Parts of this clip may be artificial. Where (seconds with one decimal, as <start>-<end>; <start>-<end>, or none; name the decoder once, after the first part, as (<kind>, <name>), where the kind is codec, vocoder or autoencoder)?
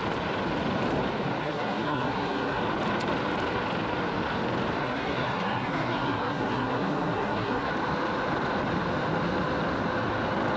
1.4-2.6 (codec, SNAC); 4.8-7.7